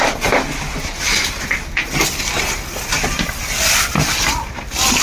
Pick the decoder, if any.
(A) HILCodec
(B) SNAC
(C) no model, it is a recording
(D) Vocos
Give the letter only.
C